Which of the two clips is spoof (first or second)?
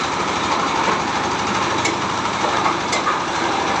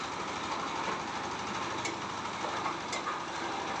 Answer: first